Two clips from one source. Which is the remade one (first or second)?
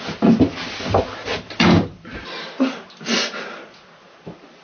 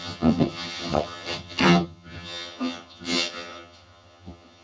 second